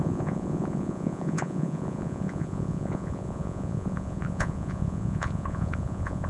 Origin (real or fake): fake